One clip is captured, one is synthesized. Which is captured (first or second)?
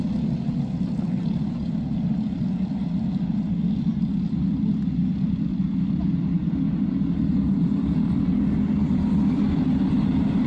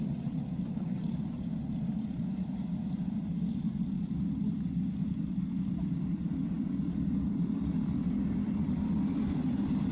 first